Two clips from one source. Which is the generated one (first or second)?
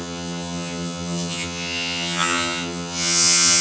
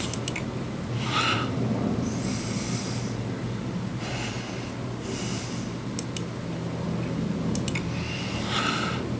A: first